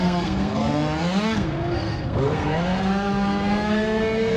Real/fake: fake